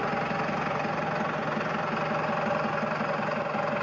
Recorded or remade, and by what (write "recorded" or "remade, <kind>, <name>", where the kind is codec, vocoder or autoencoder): recorded